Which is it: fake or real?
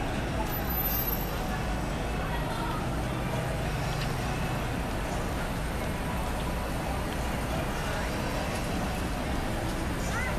real